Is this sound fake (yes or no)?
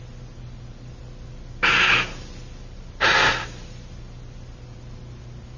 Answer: no